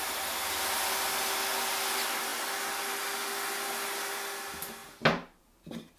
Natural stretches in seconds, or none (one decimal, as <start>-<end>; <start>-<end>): 0.0-6.0